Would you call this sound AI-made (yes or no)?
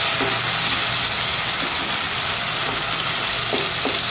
no